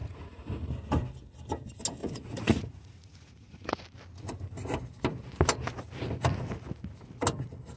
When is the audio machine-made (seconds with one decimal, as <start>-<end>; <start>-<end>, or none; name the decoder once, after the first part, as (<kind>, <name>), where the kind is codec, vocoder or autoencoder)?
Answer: 0.0-0.7 (vocoder, Vocos); 2.0-3.8